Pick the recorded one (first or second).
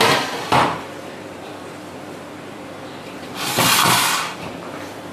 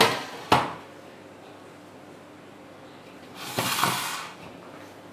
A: second